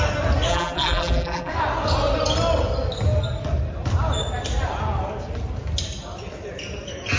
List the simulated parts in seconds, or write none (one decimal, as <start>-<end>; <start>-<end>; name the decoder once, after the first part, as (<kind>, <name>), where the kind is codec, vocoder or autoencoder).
0.5-1.5 (vocoder, BigVGAN v2)

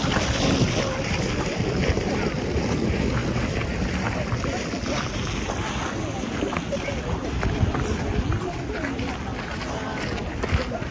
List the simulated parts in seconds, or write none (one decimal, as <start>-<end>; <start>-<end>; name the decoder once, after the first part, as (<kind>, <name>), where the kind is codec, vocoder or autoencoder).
none

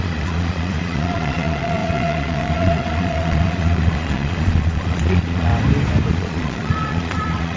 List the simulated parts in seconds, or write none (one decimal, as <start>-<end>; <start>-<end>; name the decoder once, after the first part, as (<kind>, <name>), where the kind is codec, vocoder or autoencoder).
0.0-5.5 (vocoder, Vocos); 6.1-7.6

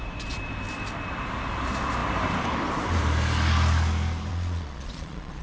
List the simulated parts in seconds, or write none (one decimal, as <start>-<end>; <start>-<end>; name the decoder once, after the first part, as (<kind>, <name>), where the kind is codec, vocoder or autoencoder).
4.3-5.4 (vocoder, Vocos)

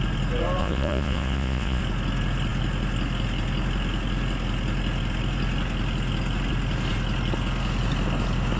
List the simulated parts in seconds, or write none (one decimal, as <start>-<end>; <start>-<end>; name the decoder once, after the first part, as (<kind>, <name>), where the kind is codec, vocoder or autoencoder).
0.6-1.8 (vocoder, Vocos)

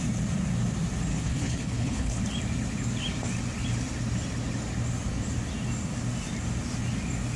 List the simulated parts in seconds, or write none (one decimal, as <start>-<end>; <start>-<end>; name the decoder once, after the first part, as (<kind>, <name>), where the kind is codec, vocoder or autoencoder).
1.1-2.2 (codec, HILCodec)

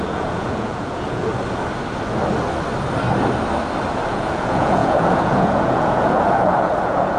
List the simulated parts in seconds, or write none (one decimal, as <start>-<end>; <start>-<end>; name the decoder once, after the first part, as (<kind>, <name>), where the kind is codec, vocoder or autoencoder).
0.0-1.3 (vocoder, Vocos); 4.1-7.2